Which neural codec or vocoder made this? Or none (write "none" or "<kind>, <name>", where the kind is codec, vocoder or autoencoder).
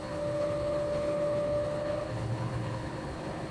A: codec, HILCodec